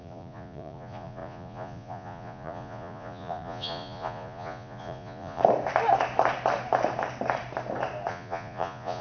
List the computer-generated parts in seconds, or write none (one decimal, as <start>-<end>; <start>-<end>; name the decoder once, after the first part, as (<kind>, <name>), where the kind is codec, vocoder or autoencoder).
0.0-5.4 (vocoder, Vocos); 8.1-9.0